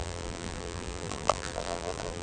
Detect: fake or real fake